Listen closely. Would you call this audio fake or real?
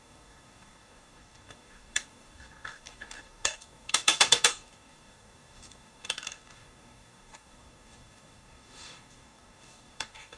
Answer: fake